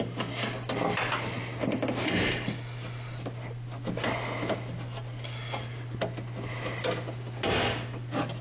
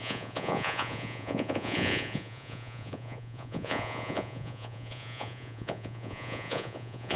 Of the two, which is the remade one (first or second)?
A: second